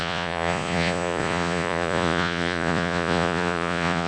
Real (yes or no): no